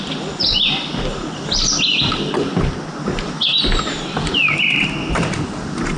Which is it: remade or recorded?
recorded